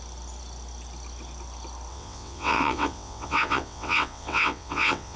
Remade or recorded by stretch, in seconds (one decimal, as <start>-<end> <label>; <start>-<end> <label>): 0.0-1.9 recorded; 1.9-5.2 remade